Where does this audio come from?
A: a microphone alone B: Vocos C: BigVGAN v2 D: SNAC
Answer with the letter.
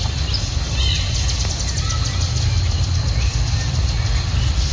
A